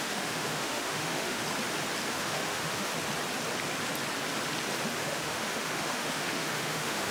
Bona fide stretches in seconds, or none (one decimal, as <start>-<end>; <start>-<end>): 1.4-2.1; 2.9-5.0